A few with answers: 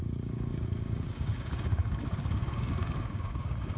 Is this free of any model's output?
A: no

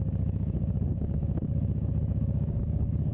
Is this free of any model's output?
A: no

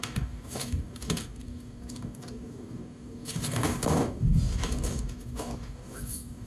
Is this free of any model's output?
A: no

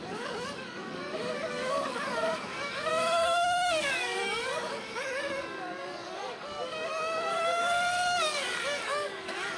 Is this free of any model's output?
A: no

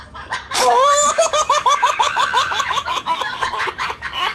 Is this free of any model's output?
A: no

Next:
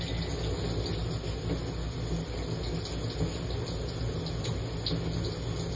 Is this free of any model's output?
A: yes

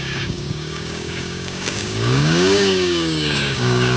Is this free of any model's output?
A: no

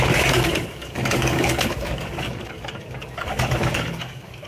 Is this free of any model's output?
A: no